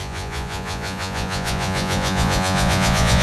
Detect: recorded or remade remade